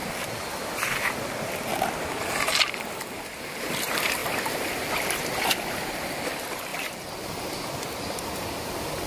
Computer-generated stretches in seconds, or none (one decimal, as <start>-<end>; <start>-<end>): 3.2-4.2; 4.9-6.7; 8.2-9.1